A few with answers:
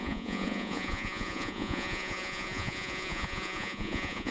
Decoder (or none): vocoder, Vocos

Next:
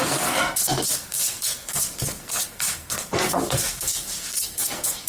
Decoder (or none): codec, SNAC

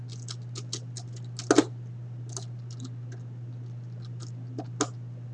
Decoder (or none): none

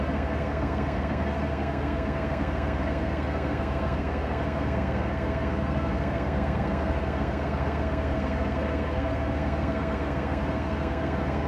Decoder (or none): codec, SNAC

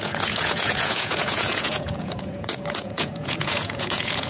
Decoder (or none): vocoder, Vocos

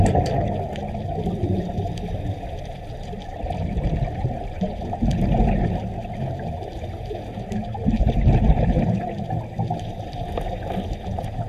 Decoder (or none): none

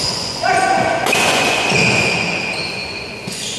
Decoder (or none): vocoder, Vocos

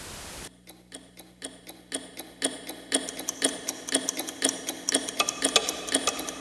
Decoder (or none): none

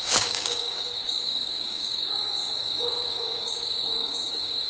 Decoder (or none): codec, DAC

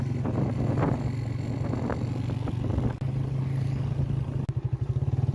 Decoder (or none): none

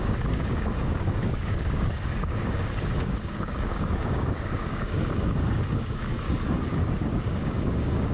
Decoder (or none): codec, DAC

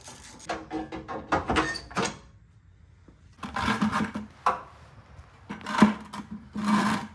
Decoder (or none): none